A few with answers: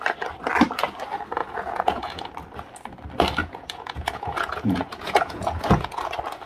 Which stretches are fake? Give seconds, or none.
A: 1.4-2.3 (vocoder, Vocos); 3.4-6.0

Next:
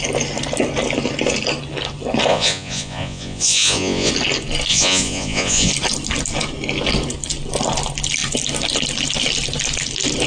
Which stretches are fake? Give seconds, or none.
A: 2.3-4.1 (vocoder, Vocos); 4.7-5.7

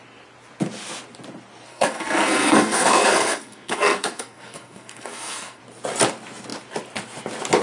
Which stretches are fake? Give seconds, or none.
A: 1.7-5.6 (codec, SNAC)

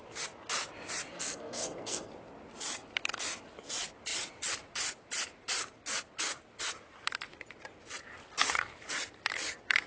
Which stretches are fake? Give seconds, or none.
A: 1.1-2.1 (codec, SNAC)